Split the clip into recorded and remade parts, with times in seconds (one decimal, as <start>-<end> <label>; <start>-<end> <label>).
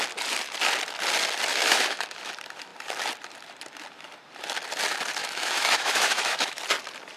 0.0-1.5 recorded; 1.5-2.3 remade; 2.3-5.2 recorded; 5.2-6.6 remade; 6.6-7.2 recorded